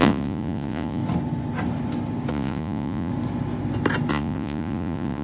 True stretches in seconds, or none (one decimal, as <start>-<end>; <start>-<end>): 1.0-2.3; 3.1-4.1